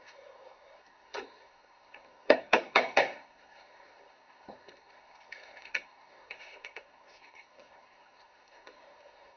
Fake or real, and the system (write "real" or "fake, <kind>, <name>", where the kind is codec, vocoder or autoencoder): fake, codec, SNAC